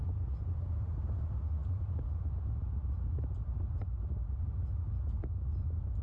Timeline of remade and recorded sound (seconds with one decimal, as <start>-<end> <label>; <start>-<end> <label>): 0.0-6.0 recorded